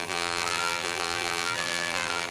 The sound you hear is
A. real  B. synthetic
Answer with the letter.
B